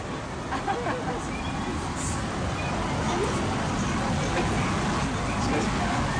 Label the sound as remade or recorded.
recorded